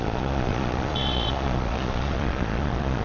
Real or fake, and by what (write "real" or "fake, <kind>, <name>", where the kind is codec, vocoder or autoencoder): fake, vocoder, Vocos